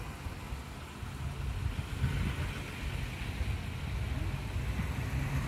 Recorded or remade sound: recorded